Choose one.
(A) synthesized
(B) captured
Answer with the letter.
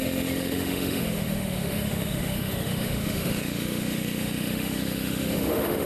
A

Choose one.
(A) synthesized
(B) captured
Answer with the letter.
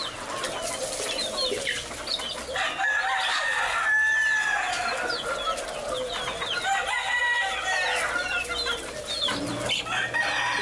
B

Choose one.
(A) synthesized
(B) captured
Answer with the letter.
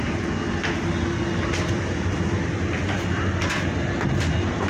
B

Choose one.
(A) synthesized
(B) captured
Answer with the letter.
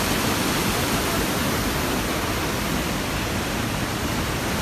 B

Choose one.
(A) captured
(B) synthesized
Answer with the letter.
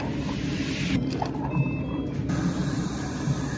B